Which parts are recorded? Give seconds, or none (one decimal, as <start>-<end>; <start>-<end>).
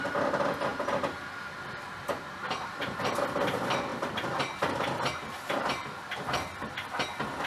0.0-7.5